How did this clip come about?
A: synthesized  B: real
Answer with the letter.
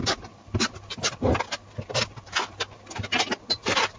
B